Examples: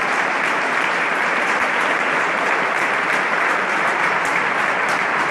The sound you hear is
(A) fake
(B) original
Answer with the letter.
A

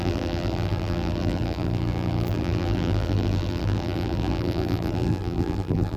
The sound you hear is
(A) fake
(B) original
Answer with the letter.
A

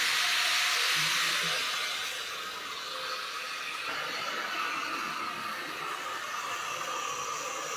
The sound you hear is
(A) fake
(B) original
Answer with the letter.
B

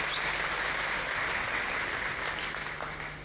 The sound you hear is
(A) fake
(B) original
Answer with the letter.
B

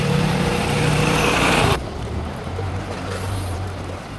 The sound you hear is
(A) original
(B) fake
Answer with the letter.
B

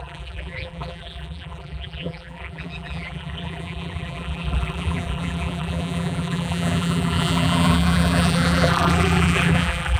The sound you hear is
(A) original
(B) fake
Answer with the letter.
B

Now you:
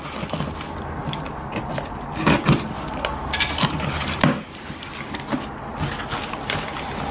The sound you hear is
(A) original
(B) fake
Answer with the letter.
A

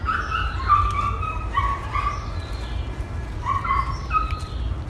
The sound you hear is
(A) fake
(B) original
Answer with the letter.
B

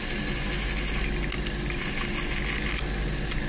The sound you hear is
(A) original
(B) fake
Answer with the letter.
A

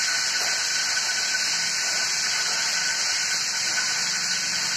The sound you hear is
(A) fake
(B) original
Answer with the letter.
B